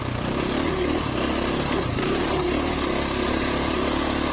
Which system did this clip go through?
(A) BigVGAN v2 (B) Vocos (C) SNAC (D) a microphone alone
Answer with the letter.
D